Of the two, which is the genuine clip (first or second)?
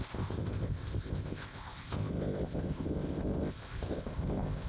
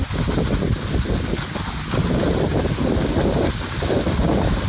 second